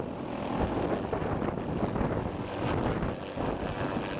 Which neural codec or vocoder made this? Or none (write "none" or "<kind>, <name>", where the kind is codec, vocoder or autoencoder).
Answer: none